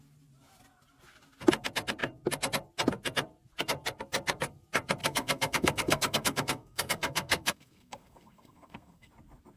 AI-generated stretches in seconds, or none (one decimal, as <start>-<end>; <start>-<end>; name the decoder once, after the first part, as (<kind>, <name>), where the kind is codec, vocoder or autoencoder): 5.0-9.1 (codec, SNAC)